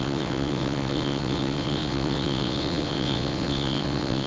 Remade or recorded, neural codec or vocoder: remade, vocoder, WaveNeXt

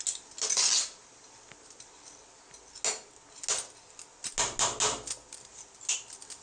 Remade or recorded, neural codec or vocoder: recorded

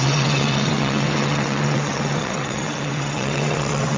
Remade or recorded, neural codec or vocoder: remade, vocoder, WaveNeXt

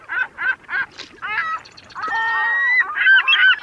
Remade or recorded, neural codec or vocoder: recorded